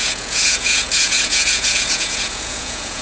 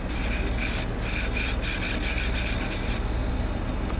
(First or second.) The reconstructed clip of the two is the first